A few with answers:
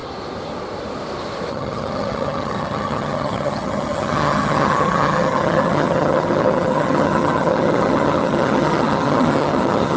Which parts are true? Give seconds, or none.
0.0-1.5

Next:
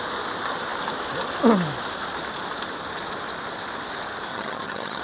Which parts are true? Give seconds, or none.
0.0-4.3

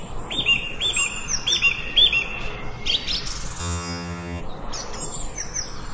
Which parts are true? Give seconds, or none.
0.0-3.6; 4.4-5.9

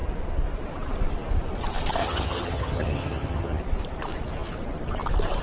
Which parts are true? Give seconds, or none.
0.0-2.0; 3.6-5.4